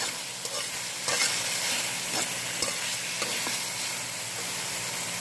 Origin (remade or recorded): recorded